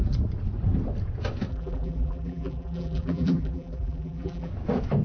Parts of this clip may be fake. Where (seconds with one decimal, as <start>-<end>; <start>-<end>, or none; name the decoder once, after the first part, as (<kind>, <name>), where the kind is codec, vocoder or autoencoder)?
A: 1.5-4.5 (vocoder, BigVGAN v2)